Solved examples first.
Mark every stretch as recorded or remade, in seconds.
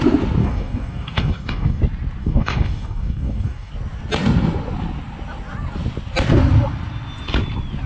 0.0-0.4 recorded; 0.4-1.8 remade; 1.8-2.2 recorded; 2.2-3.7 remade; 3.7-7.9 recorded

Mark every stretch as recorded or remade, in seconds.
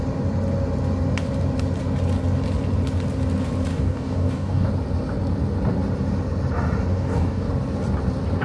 0.0-3.7 recorded; 3.7-4.7 remade; 4.7-6.9 recorded; 6.9-7.5 remade; 7.5-8.4 recorded